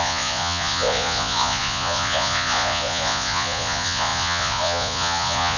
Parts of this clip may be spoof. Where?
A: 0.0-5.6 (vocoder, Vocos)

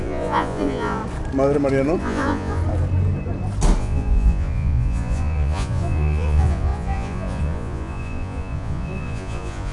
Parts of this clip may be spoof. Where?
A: 0.0-1.0 (vocoder, Vocos); 2.0-2.6; 3.8-9.7